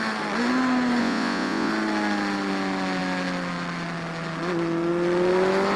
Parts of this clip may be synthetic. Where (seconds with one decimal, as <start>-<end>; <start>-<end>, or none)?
1.0-1.7

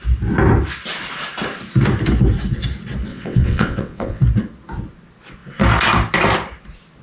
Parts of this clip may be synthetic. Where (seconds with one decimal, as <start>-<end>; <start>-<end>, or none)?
3.1-4.2

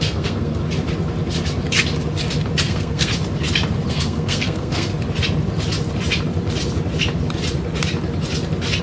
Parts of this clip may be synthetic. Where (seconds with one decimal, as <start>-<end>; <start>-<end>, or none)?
0.0-0.6; 2.6-3.1; 3.9-4.9

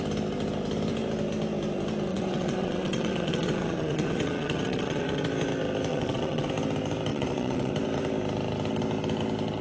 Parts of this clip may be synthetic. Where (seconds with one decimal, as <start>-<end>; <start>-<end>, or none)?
2.1-5.2; 5.9-6.5; 7.1-7.7

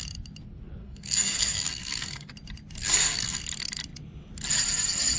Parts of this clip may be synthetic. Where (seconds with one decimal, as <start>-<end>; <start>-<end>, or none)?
0.8-2.3; 2.8-3.4

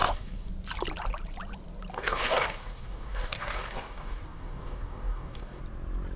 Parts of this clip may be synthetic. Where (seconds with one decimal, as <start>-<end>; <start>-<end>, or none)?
0.0-0.5; 1.9-5.6